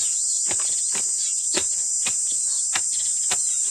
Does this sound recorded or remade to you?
recorded